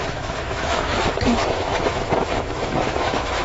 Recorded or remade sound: remade